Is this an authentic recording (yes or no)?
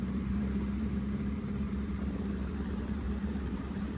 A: no